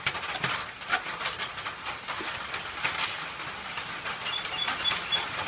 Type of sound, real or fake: real